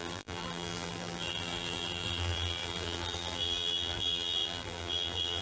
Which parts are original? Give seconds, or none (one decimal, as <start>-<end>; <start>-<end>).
none